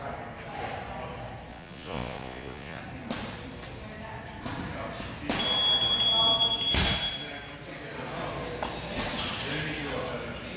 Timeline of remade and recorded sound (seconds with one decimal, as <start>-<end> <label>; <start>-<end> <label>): 0.0-1.5 recorded; 1.5-2.8 remade; 2.8-10.6 recorded